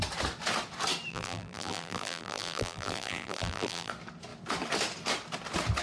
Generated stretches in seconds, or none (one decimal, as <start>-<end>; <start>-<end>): 1.1-3.9